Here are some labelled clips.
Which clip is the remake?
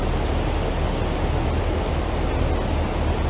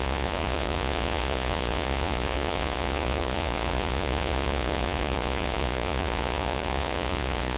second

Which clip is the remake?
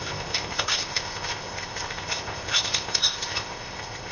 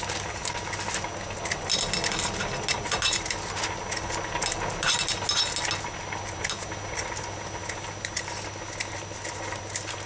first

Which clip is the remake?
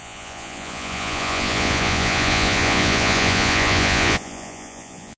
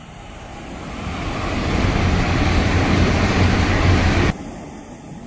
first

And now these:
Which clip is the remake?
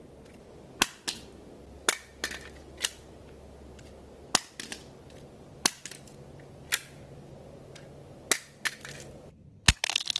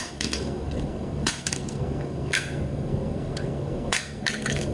second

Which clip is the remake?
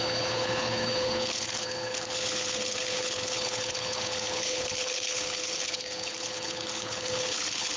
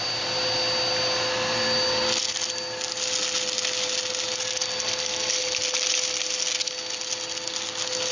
first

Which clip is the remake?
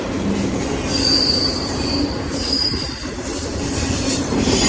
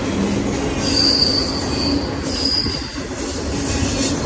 first